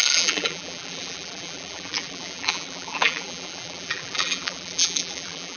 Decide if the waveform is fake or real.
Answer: fake